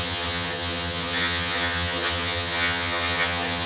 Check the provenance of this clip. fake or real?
fake